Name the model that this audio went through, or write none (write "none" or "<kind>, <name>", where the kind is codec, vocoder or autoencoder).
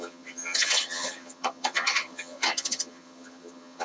vocoder, HiFi-GAN